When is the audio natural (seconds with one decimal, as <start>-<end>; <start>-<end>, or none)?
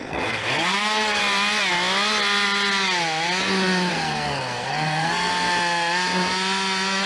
1.2-3.9; 5.3-7.1